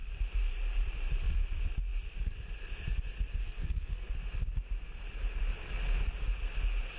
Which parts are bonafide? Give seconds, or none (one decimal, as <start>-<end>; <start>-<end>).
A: 0.0-3.4; 4.1-7.0